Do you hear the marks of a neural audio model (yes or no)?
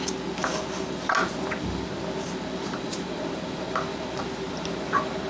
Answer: no